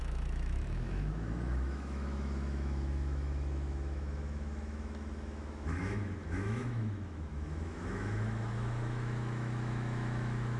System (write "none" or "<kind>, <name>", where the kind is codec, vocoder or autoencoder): autoencoder, DAC-VAE